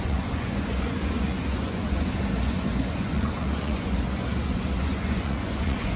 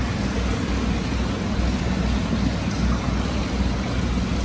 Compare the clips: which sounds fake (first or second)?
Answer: first